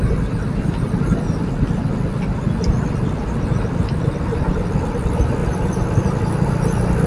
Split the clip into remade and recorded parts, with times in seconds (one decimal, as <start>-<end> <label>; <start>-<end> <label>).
0.0-7.1 recorded